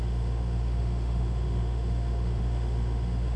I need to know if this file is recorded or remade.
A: remade